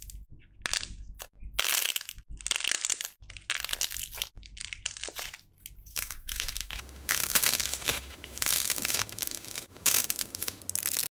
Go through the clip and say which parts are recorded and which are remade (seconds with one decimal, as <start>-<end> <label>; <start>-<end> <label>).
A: 0.0-5.9 recorded; 5.9-10.6 remade; 10.6-11.1 recorded